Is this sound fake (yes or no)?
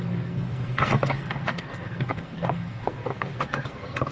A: yes